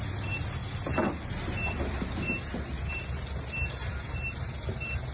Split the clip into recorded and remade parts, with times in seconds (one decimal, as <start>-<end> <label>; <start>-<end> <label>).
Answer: 0.0-5.1 recorded